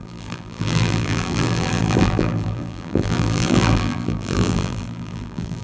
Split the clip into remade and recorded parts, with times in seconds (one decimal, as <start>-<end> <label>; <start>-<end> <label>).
0.0-5.6 remade